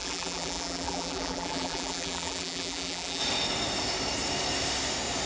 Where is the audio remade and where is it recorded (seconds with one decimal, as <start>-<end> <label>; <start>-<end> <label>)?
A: 0.0-3.2 remade; 3.2-5.3 recorded